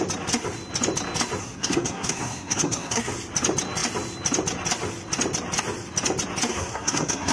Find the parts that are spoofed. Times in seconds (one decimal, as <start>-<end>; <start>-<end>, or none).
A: 1.4-3.1; 6.5-7.3